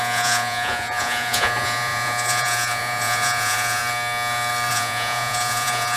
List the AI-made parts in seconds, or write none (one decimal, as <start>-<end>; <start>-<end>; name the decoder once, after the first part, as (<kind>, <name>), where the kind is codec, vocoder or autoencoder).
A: 0.0-3.8 (vocoder, Vocos); 4.7-6.0